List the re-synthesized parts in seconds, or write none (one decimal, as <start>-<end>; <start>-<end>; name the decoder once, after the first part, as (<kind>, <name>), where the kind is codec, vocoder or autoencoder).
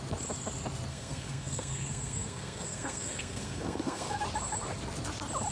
0.9-4.2 (codec, SNAC)